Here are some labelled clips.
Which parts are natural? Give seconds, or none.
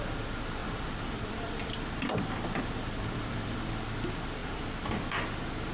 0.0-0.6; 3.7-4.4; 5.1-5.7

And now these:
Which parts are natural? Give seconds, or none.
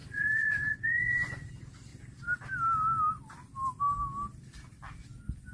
1.5-5.5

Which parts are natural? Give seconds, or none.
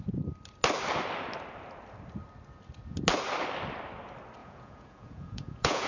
0.0-4.4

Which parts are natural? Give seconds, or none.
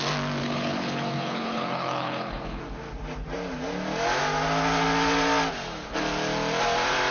0.0-0.4; 2.6-7.1